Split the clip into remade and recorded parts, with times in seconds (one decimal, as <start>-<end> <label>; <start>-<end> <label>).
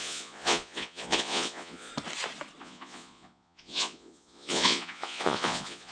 0.0-1.9 remade; 1.9-2.6 recorded; 2.6-5.9 remade